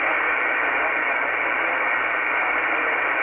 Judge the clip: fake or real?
real